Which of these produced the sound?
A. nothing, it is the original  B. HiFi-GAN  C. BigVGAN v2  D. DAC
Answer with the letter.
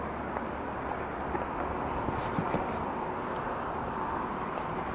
A